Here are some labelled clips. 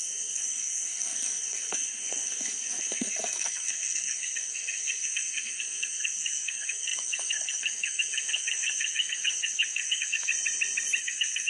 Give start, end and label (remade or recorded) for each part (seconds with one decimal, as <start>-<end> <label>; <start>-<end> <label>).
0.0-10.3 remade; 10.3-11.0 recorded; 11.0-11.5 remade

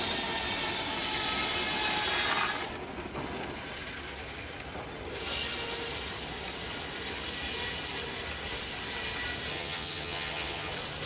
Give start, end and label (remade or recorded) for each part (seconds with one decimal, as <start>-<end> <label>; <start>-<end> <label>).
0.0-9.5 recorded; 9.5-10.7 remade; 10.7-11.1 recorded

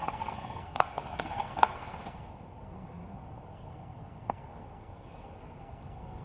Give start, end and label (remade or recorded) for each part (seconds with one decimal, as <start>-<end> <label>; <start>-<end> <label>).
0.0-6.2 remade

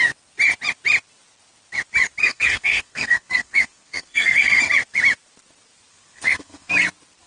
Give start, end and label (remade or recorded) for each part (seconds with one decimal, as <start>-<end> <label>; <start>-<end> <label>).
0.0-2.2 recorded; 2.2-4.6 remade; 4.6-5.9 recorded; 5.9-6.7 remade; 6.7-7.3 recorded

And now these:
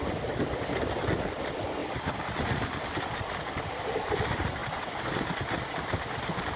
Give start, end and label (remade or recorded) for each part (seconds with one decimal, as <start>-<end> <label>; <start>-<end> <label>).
0.0-6.6 recorded

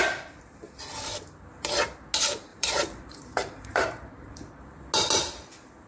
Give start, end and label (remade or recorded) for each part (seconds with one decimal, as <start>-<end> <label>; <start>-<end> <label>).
0.0-2.5 recorded; 2.5-4.8 remade; 4.8-5.9 recorded